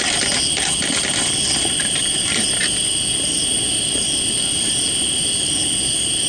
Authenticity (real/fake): real